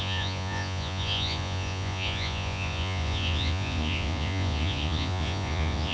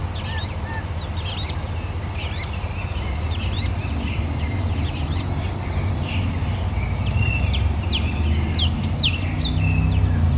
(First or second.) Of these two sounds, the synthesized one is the first